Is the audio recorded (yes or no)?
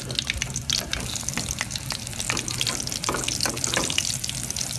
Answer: yes